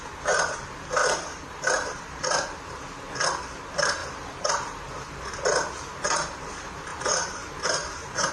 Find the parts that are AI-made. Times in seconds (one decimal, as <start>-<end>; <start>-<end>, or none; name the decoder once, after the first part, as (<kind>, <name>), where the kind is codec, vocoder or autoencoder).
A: 1.0-2.0 (vocoder, BigVGAN v2); 6.9-8.3